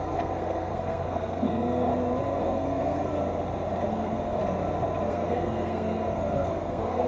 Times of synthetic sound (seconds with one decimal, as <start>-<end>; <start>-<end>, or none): 0.0-1.9; 2.4-3.1; 3.9-4.4; 5.1-7.1